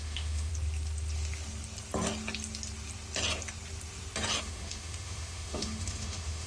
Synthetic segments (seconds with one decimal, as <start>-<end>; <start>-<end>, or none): 0.0-0.5; 4.4-6.5